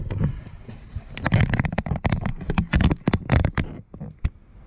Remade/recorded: recorded